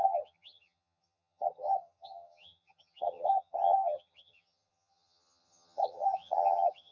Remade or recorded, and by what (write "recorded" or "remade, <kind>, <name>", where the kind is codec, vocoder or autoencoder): remade, vocoder, HiFi-GAN